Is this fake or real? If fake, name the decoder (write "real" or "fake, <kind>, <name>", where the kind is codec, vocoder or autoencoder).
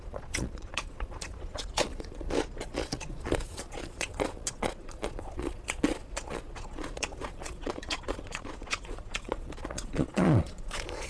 fake, vocoder, Vocos